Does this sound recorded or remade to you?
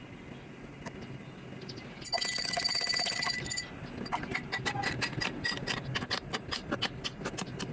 recorded